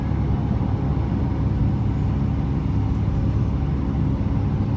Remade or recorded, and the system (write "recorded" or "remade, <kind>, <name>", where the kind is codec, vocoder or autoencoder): recorded